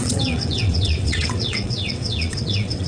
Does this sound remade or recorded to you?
remade